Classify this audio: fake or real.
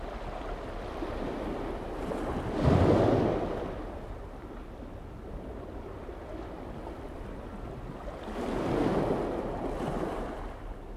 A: real